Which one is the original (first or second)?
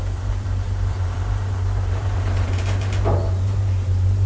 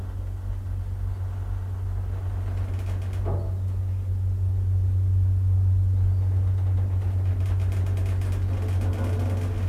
second